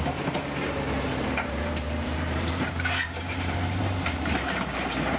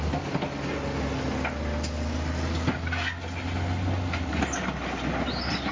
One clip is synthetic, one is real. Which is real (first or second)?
second